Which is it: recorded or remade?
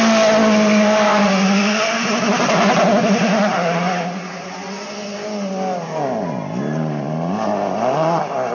recorded